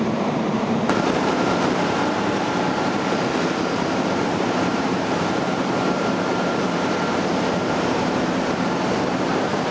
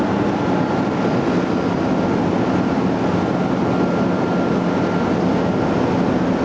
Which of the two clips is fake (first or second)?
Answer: first